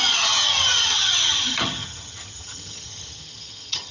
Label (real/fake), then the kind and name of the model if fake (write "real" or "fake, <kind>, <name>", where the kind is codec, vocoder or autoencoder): fake, vocoder, HiFi-GAN